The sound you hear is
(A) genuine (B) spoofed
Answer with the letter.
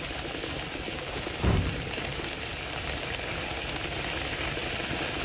A